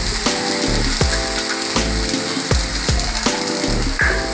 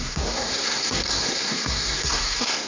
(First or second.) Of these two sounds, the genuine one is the first